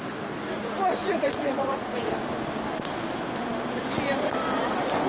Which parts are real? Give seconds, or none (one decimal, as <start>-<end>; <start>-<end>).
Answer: 0.0-1.0; 2.1-5.1